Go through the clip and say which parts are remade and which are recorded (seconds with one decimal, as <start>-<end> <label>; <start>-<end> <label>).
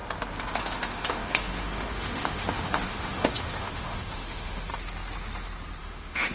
0.0-0.6 recorded; 0.6-4.7 remade; 4.7-5.8 recorded; 5.8-6.3 remade